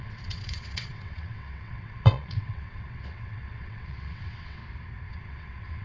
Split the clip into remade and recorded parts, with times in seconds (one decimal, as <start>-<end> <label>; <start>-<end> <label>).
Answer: 0.0-4.6 remade; 4.6-5.1 recorded; 5.1-5.8 remade